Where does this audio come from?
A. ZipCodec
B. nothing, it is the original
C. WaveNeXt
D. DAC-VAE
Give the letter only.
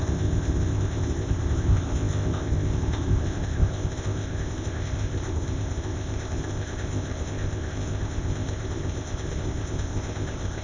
A